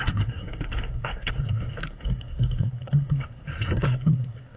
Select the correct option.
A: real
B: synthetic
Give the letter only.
B